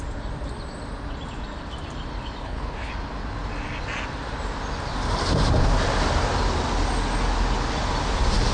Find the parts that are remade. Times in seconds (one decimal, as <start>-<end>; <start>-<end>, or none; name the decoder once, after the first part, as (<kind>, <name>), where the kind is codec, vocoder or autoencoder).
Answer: 2.4-2.9 (codec, HILCodec)